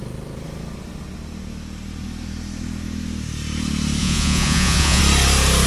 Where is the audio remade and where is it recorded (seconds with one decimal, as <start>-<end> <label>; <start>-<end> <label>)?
0.0-4.0 recorded; 4.0-5.0 remade; 5.0-5.7 recorded